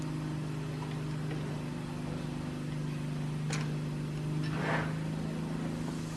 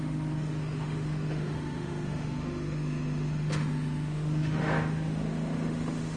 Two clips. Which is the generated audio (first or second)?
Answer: second